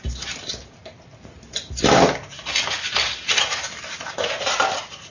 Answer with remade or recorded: recorded